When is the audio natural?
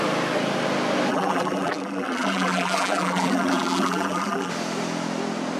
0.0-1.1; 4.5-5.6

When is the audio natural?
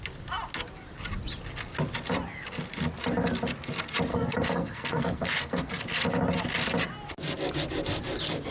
0.0-4.1; 5.7-8.5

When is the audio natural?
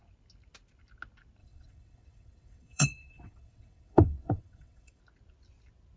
0.0-1.4; 5.0-6.0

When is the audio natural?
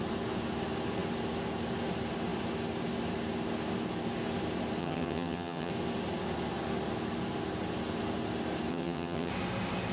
0.0-4.8; 5.7-8.7; 9.3-9.9